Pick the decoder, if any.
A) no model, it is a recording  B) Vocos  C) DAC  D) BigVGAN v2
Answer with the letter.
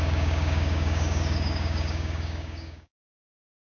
C